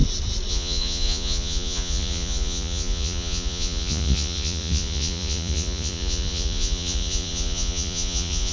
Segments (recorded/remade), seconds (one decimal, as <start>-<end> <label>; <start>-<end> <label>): 0.0-0.5 recorded; 0.5-8.5 remade